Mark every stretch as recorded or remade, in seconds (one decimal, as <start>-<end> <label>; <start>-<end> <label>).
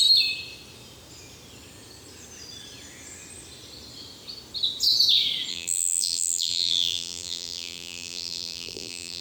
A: 0.0-5.5 recorded; 5.5-9.2 remade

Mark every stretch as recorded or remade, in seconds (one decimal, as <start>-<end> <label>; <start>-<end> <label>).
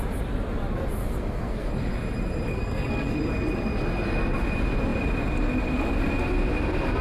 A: 0.0-1.0 recorded; 1.0-1.7 remade; 1.7-2.5 recorded; 2.5-3.1 remade; 3.1-7.0 recorded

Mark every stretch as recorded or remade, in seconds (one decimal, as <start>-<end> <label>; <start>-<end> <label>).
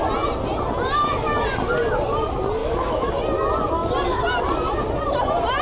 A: 0.0-2.6 recorded; 2.6-3.1 remade; 3.1-5.6 recorded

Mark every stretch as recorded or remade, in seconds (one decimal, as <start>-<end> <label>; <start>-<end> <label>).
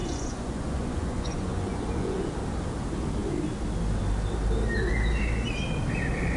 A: 0.0-2.3 remade; 2.3-6.4 recorded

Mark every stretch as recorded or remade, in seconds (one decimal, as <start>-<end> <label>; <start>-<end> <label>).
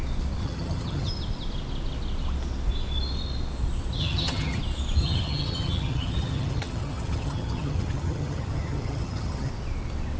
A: 0.0-0.4 recorded; 0.4-1.1 remade; 1.1-4.0 recorded; 4.0-4.6 remade; 4.6-5.0 recorded; 5.0-9.5 remade; 9.5-10.2 recorded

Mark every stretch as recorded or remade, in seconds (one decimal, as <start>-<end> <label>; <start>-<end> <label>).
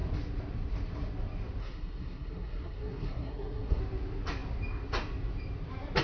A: 0.0-1.6 recorded; 1.6-3.8 remade; 3.8-6.0 recorded